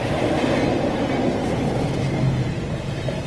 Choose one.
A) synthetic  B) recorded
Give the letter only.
B